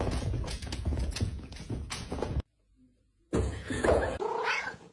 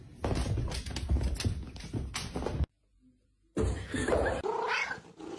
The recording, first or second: second